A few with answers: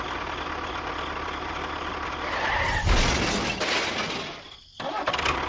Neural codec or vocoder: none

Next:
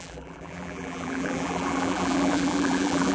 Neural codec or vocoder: vocoder, BigVGAN v2